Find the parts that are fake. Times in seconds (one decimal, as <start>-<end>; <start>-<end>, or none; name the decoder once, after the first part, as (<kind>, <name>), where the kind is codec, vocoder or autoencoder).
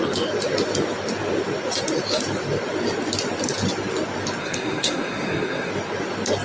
4.4-5.7 (codec, SNAC)